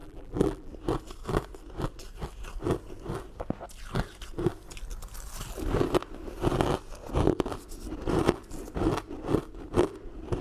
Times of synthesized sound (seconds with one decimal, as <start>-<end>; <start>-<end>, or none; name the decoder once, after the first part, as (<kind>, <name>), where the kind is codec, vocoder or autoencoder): 0.0-0.7 (vocoder, BigVGAN v2)